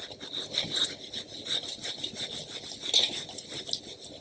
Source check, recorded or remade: recorded